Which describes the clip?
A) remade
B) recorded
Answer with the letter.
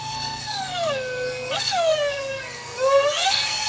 A